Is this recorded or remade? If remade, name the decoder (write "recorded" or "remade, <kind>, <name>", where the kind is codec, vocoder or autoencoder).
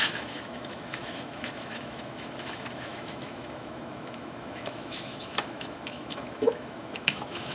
remade, autoencoder, DAC-VAE